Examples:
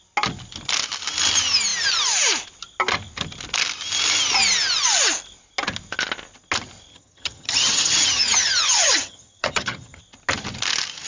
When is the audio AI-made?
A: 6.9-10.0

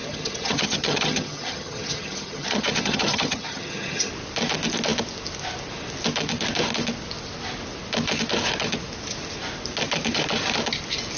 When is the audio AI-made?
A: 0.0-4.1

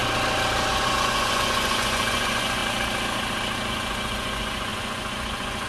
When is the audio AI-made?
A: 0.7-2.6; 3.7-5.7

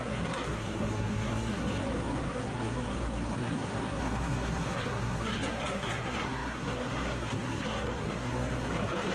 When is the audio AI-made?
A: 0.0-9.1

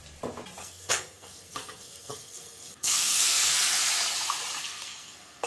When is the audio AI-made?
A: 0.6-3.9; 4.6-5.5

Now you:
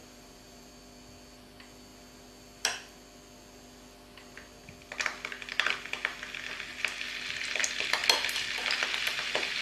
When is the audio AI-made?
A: 0.0-0.8

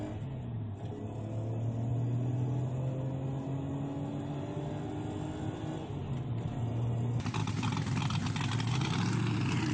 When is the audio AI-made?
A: none